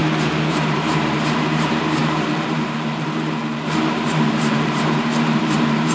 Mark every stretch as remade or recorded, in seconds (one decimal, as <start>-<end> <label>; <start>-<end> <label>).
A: 0.0-0.5 recorded; 0.5-5.9 remade